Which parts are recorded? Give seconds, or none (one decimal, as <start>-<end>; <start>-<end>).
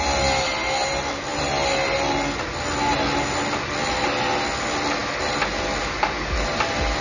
0.0-7.0